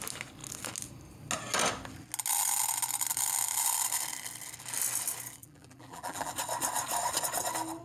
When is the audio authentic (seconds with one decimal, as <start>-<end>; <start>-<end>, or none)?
0.0-5.4; 6.3-7.8